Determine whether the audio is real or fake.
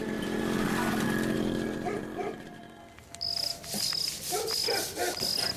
real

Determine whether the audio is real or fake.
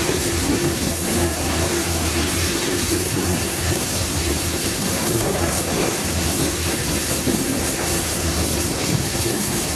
fake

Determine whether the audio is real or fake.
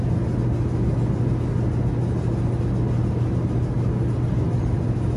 real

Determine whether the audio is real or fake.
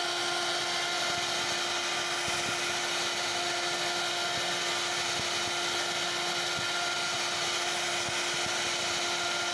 real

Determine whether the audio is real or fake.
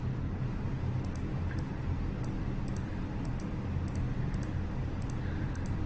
real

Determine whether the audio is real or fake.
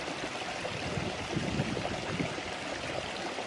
real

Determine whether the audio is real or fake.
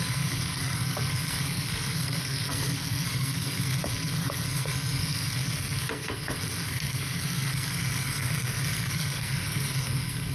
fake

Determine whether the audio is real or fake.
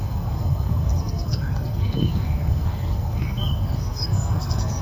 fake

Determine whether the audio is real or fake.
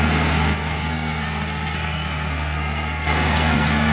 fake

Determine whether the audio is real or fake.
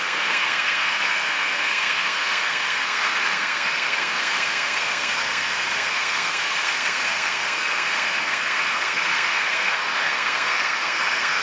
fake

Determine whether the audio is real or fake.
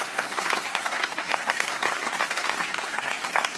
fake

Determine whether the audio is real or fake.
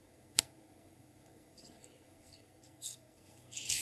fake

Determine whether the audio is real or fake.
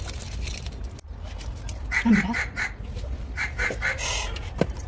real